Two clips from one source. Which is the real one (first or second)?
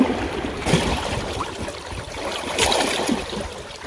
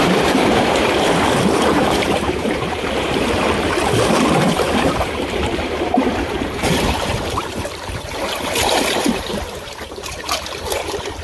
first